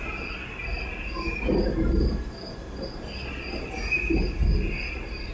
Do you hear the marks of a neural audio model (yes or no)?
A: no